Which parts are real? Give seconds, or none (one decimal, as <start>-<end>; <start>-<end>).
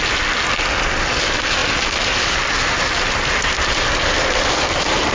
0.0-5.1